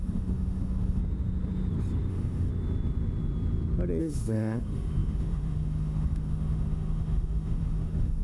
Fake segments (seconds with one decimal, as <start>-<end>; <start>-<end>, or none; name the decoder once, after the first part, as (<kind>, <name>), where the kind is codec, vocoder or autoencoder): 0.0-1.0 (autoencoder, DAC-VAE); 2.1-2.5; 4.0-8.2